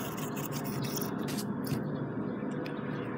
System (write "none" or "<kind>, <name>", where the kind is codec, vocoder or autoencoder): none